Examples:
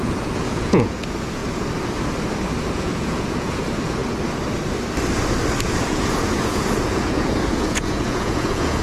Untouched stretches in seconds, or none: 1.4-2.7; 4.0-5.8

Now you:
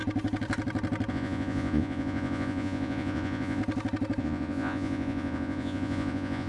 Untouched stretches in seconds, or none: 0.0-1.1; 3.6-4.2

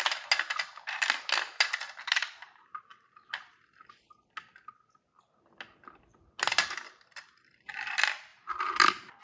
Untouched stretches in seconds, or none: 0.0-9.2

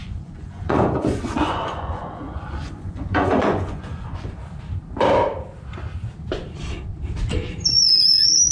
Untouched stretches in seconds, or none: 4.3-8.5